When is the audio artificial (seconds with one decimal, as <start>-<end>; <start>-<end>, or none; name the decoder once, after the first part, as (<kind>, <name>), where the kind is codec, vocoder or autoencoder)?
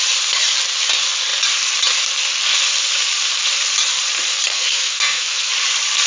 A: 4.5-5.5 (codec, SNAC)